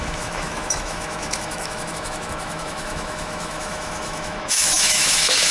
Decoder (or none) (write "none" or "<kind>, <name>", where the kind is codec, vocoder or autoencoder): autoencoder, DAC-VAE